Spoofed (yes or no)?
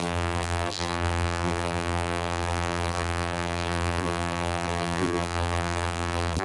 yes